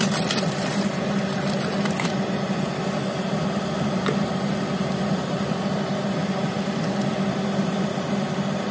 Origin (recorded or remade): recorded